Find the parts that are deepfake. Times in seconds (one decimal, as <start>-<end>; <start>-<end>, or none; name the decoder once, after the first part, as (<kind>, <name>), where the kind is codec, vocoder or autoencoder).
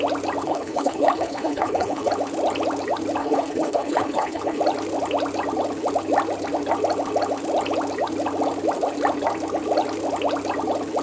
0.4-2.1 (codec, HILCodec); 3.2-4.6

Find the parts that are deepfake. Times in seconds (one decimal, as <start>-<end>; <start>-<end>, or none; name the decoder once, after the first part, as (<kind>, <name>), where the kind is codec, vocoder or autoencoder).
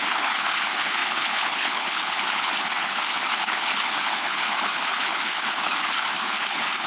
0.0-6.9 (codec, HILCodec)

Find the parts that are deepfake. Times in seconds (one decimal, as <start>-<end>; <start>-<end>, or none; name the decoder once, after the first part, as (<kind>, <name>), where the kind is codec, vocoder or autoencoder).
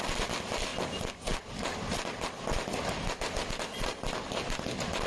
none